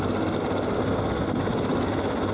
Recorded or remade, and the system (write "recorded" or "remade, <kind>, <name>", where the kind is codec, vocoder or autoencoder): recorded